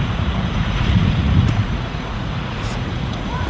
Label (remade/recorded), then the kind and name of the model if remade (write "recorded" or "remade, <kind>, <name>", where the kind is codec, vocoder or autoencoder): remade, vocoder, Vocos